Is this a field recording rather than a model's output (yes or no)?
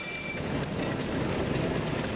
yes